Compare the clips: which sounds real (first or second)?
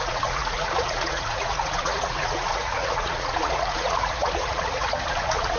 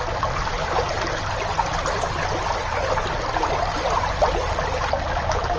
second